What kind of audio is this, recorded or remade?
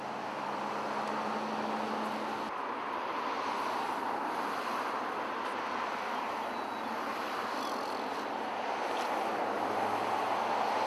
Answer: recorded